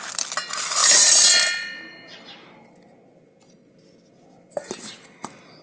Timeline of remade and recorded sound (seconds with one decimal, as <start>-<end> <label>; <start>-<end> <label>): 0.0-5.6 recorded